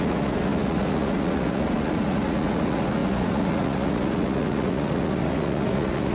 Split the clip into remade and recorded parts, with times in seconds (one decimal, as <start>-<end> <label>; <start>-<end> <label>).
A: 0.0-6.1 remade